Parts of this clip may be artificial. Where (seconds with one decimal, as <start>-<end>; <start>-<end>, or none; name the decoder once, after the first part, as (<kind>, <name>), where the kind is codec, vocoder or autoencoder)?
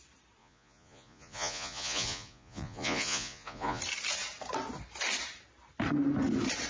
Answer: 0.4-3.8 (vocoder, Vocos)